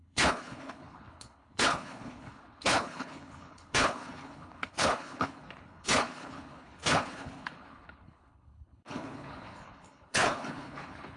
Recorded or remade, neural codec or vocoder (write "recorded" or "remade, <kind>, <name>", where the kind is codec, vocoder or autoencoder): remade, codec, HILCodec